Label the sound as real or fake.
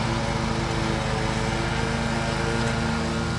real